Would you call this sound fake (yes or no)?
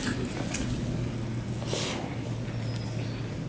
no